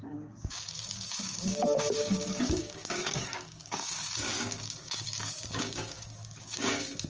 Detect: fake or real fake